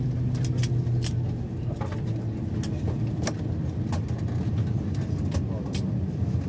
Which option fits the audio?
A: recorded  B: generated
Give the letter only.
A